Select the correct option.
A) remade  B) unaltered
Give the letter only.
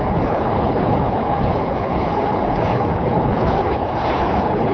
A